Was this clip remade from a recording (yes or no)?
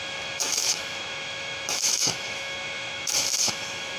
yes